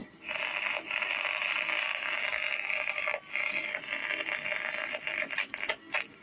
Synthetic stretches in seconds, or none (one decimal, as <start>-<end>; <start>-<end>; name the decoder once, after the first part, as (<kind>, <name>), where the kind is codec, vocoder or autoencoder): none